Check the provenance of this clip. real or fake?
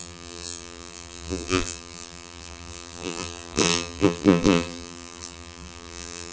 fake